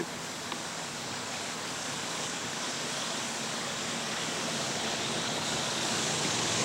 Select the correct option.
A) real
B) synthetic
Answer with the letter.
B